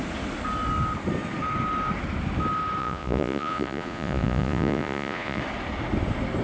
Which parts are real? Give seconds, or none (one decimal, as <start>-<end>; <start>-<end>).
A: 0.0-2.8; 5.4-6.4